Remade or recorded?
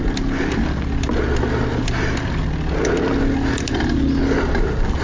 recorded